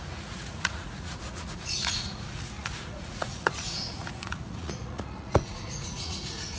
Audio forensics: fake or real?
fake